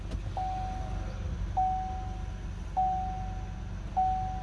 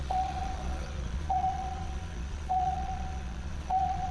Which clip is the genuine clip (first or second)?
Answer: first